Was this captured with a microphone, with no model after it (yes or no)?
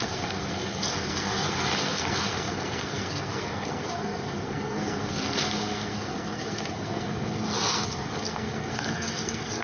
no